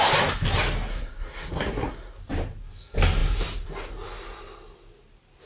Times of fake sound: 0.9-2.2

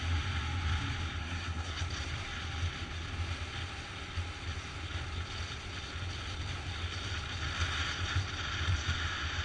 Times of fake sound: 1.2-1.8